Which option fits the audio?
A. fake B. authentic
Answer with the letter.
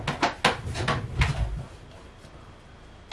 B